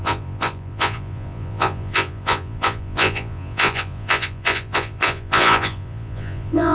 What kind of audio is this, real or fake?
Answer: fake